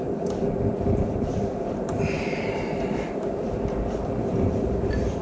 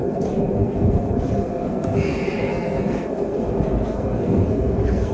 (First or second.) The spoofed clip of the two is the second